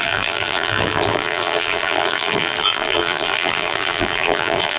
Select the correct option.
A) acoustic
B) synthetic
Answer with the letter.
B